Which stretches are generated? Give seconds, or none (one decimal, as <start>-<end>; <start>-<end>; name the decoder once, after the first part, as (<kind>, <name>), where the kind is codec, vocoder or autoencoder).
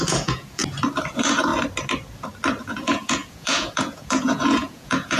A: 0.0-0.6 (vocoder, Vocos); 1.1-1.5; 2.6-5.2